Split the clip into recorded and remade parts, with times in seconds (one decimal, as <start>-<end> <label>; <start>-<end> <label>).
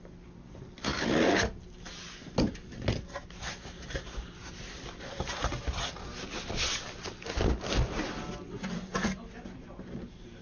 0.0-10.4 recorded